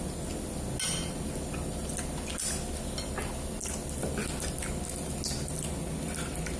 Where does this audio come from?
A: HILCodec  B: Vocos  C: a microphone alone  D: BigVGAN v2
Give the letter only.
C